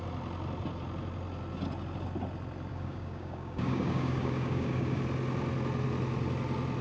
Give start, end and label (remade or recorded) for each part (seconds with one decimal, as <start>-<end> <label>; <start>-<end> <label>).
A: 0.0-2.7 recorded; 2.7-5.0 remade; 5.0-6.8 recorded